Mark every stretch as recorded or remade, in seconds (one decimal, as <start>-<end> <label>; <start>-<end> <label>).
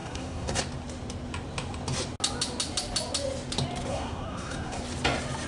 0.0-0.6 remade; 0.6-3.9 recorded; 3.9-4.8 remade; 4.8-5.5 recorded